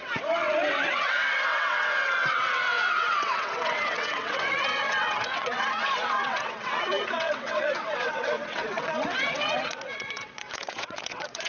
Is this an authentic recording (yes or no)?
no